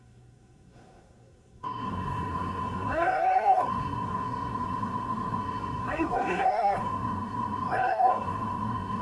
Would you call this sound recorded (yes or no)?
no